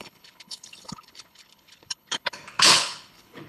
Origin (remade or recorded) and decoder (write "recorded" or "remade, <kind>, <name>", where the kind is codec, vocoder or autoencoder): remade, codec, HILCodec